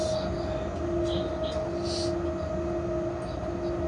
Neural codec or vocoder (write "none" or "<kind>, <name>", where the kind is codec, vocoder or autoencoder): none